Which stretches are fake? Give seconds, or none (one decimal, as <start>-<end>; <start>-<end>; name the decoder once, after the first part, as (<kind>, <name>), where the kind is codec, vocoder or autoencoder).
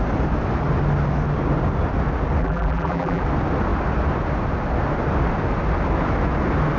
2.4-3.2 (vocoder, BigVGAN v2)